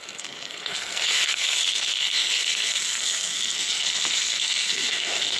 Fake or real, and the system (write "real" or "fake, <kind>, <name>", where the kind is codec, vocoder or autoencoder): fake, codec, SNAC